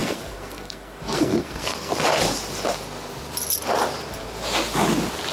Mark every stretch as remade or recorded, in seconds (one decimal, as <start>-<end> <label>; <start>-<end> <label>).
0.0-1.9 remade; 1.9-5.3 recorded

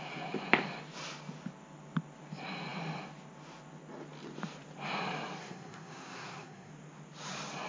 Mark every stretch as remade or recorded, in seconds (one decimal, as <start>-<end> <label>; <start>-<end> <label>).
0.0-5.4 recorded; 5.4-6.7 remade; 6.7-7.7 recorded

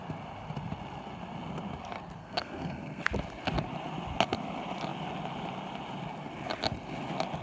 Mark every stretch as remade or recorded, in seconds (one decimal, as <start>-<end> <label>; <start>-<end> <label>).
0.0-2.2 recorded; 2.2-3.0 remade; 3.0-7.4 recorded